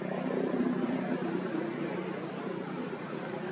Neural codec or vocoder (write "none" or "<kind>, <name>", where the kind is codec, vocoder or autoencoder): none